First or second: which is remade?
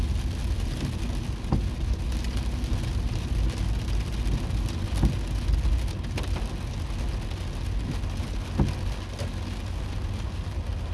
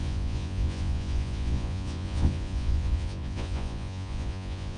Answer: second